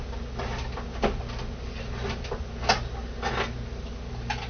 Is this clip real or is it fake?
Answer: real